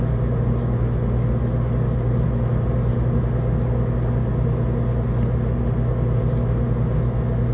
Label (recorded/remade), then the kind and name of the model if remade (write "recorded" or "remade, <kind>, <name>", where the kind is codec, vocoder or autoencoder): recorded